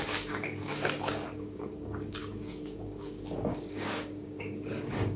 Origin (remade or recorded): remade